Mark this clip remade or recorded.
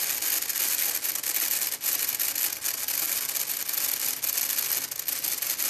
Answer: recorded